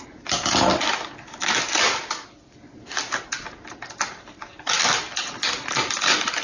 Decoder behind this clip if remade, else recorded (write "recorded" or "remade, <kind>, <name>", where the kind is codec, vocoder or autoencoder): recorded